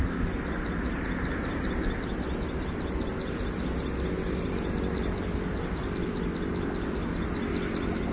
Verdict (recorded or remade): recorded